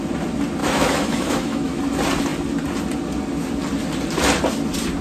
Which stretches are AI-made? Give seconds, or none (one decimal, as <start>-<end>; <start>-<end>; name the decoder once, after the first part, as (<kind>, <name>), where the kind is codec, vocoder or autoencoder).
0.6-1.8 (autoencoder, DAC-VAE)